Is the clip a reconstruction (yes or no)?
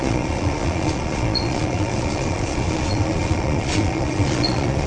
yes